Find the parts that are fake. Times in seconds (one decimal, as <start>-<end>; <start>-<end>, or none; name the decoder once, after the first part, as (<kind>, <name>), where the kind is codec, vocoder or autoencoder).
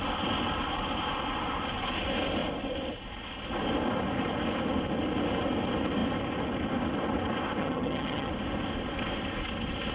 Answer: 7.6-8.3 (vocoder, HiFi-GAN)